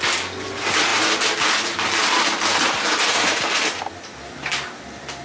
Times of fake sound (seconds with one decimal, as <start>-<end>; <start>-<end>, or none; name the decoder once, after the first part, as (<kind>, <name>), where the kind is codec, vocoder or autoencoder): none